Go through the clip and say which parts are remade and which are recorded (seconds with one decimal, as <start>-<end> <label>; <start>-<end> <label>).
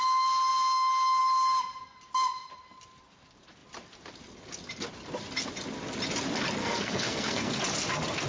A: 0.0-6.6 recorded; 6.6-7.6 remade; 7.6-8.3 recorded